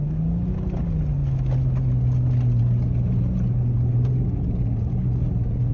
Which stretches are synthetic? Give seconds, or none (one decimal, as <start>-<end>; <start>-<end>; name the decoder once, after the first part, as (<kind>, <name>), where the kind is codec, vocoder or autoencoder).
none